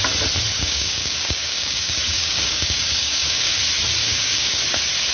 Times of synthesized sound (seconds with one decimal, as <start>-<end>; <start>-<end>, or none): 0.5-3.6; 4.0-4.6